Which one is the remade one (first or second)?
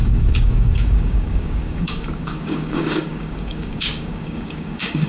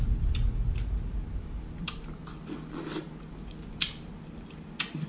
first